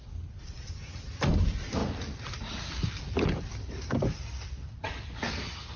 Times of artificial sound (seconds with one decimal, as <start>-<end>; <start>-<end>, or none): 0.0-0.7; 1.8-5.3